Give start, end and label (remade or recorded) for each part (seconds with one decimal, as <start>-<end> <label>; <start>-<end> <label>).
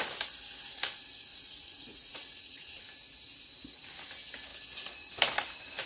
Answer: 0.0-1.3 recorded; 1.3-2.8 remade; 2.8-5.9 recorded